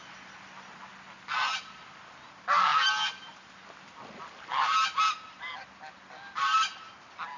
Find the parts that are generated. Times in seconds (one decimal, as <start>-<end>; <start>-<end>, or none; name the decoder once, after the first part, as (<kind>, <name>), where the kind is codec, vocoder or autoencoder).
none

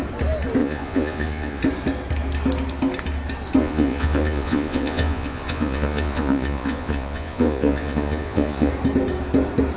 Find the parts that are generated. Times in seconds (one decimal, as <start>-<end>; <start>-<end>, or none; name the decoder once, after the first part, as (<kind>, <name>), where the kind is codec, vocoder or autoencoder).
0.6-1.6 (vocoder, Vocos); 3.6-8.7